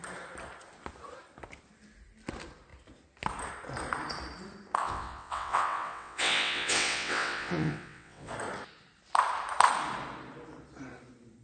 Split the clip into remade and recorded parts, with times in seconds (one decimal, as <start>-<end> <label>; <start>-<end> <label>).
0.0-4.8 recorded; 4.8-8.3 remade; 8.3-11.4 recorded